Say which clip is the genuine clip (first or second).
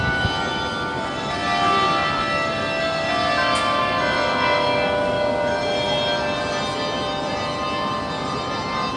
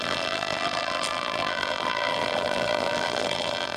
first